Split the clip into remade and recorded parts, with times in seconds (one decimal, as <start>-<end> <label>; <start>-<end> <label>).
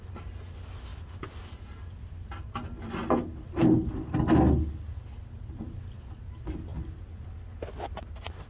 0.0-8.5 recorded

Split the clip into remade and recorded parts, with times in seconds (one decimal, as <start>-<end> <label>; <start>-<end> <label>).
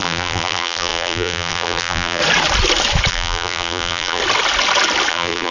0.0-2.2 remade; 2.2-3.1 recorded; 3.1-4.2 remade; 4.2-5.1 recorded; 5.1-5.5 remade